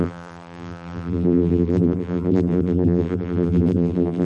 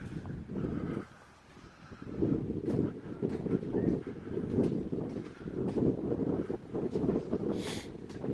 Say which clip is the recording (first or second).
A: second